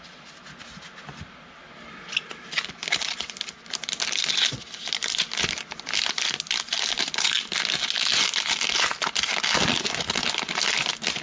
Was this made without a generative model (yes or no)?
yes